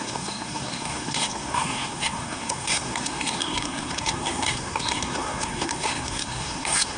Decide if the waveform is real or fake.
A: fake